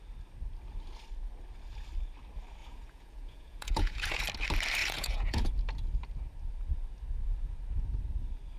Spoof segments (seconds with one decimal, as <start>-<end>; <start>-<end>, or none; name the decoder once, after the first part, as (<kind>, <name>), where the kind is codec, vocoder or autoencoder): 2.6-4.2 (vocoder, Vocos); 4.8-5.5